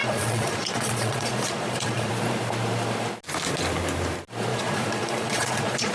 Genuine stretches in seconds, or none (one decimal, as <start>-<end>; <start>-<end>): 2.1-4.5